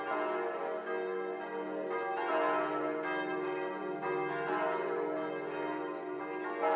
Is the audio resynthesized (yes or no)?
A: no